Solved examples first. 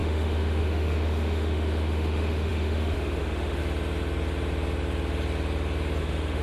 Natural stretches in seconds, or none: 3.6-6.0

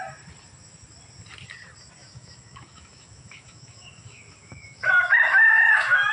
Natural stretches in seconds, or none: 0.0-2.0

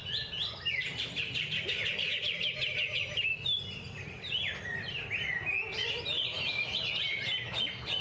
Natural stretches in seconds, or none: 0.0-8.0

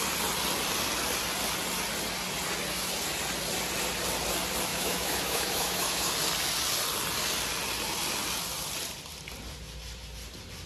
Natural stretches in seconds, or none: 0.0-4.7; 6.1-10.7

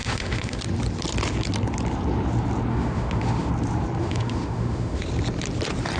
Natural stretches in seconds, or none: 0.6-2.7; 3.5-4.0; 5.0-6.0

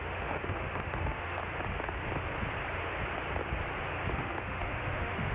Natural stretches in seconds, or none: 1.4-4.1

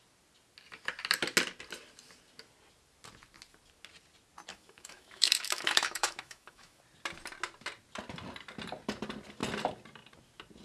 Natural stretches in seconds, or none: 0.0-4.5; 6.8-10.6

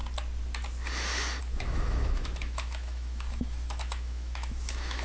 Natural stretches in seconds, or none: 0.0-1.4